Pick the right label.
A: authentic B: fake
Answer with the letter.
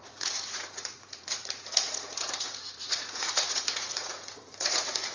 B